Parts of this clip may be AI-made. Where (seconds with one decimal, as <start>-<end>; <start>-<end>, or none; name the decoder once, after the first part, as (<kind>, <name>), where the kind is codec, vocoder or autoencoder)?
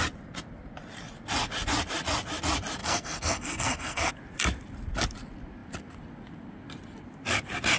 2.8-4.1 (codec, SNAC)